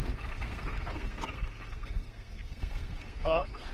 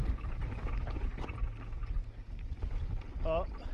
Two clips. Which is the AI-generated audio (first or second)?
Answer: first